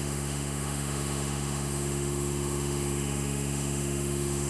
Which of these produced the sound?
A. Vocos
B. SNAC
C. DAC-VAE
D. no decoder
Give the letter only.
C